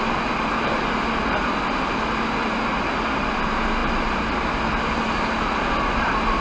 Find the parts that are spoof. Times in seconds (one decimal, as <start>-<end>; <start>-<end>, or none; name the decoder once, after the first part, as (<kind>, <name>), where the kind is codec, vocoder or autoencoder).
none